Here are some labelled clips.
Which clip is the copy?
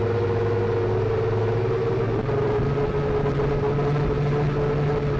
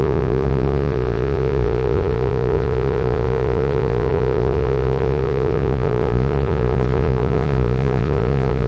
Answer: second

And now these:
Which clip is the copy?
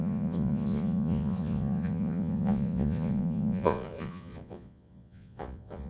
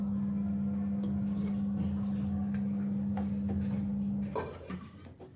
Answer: first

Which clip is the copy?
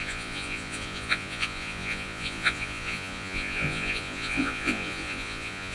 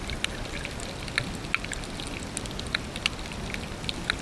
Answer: first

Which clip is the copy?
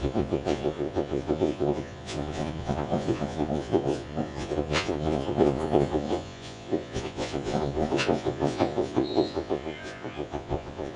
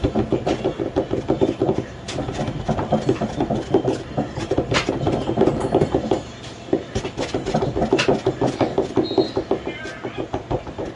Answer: first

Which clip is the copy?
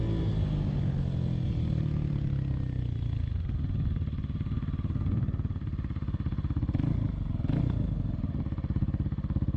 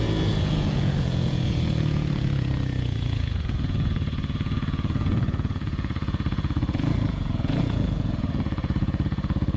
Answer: second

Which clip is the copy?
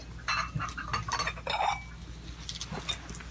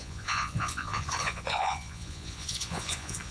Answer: second